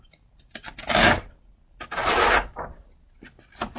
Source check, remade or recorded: recorded